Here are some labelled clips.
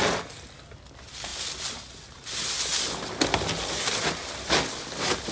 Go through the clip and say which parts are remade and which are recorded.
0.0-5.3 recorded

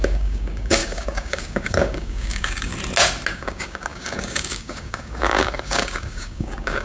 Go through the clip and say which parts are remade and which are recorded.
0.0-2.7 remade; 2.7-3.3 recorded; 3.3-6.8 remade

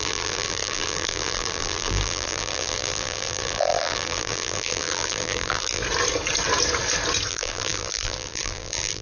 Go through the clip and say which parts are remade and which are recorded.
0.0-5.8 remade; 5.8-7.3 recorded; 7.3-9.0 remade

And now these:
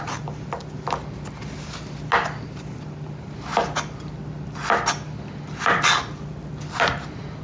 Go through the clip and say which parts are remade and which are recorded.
0.0-7.4 recorded

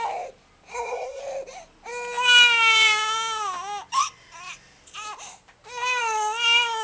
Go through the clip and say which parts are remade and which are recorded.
0.0-0.7 recorded; 0.7-1.2 remade; 1.2-6.8 recorded

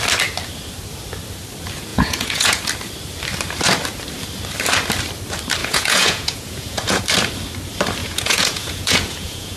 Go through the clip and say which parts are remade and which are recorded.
0.0-1.9 recorded; 1.9-2.6 remade; 2.6-5.6 recorded; 5.6-7.0 remade; 7.0-8.0 recorded; 8.0-9.6 remade